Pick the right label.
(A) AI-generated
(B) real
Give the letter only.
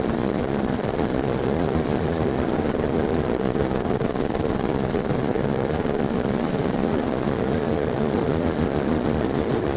A